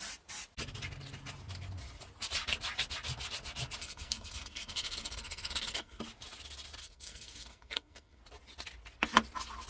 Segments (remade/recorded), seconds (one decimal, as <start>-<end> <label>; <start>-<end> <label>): 0.0-3.8 recorded; 3.8-6.0 remade; 6.0-6.8 recorded; 6.8-8.2 remade; 8.2-9.7 recorded